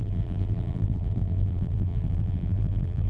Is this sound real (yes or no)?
no